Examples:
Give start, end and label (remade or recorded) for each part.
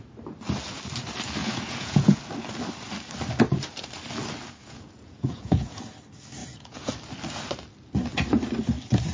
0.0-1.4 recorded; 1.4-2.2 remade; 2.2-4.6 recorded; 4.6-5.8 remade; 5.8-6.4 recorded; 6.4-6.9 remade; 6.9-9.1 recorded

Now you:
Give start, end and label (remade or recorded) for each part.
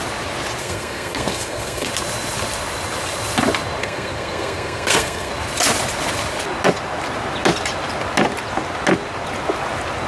0.0-0.6 recorded; 0.6-1.9 remade; 1.9-3.8 recorded; 3.8-5.3 remade; 5.3-10.1 recorded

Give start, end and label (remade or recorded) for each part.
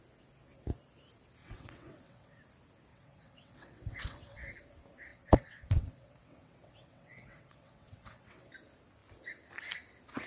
0.0-1.4 recorded; 1.4-2.4 remade; 2.4-2.9 recorded; 2.9-4.5 remade; 4.5-5.1 recorded; 5.1-8.5 remade; 8.5-10.3 recorded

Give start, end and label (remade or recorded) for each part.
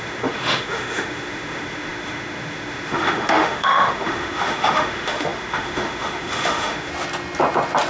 0.0-6.9 remade; 6.9-7.9 recorded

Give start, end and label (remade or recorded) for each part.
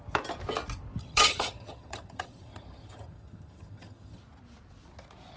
0.0-1.0 recorded; 1.0-4.2 remade; 4.2-5.4 recorded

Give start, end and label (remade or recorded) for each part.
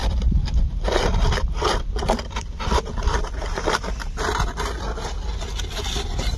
0.0-3.8 remade; 3.8-6.4 recorded